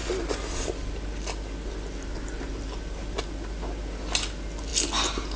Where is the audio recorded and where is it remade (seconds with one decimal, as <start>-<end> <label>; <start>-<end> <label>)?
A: 0.0-5.4 recorded